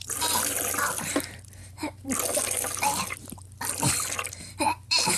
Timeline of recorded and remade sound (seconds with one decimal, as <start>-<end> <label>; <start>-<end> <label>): 0.0-5.2 recorded